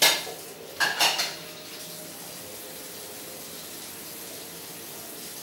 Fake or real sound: real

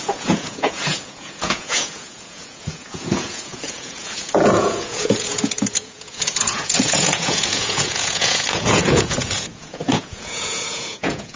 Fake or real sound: fake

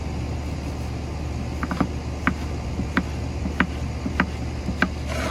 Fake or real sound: real